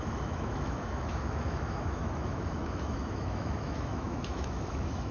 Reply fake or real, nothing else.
fake